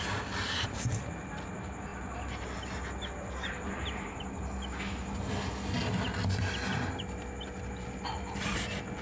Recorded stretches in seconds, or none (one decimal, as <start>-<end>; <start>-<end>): 0.0-9.0